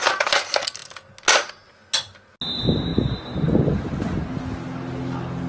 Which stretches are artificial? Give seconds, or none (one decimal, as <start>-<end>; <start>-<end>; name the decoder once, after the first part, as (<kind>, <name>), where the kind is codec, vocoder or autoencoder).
none